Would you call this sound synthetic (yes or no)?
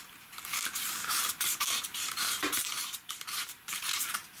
yes